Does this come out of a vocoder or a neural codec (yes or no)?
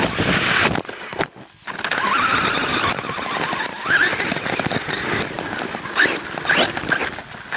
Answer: no